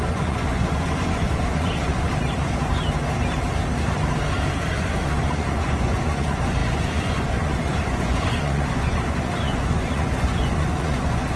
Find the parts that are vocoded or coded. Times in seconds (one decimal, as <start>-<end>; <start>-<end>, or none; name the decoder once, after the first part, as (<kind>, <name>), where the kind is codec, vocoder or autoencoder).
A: 0.0-2.1 (vocoder, Vocos); 4.7-11.4